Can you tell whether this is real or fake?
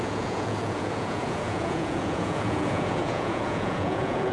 fake